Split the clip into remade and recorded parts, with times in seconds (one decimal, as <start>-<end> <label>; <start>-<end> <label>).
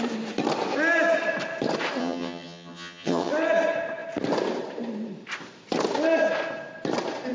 0.0-2.0 recorded; 2.0-3.3 remade; 3.3-7.3 recorded